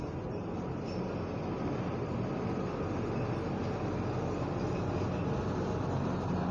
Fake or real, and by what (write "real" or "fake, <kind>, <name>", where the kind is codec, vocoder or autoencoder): real